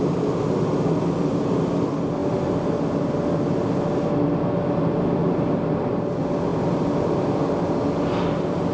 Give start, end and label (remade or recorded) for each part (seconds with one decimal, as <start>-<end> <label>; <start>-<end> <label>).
0.0-8.7 recorded